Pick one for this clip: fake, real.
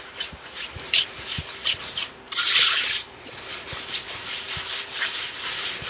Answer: fake